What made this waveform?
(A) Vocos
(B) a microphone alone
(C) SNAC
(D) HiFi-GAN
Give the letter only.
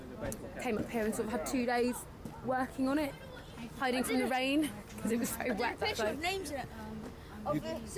B